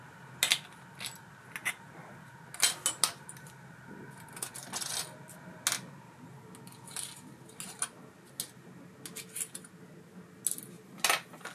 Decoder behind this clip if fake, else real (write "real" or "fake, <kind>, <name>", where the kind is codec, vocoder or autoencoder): real